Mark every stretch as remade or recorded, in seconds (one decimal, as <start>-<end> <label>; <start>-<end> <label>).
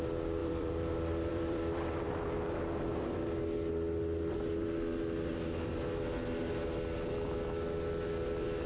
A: 0.0-0.4 recorded; 0.4-2.1 remade; 2.1-8.7 recorded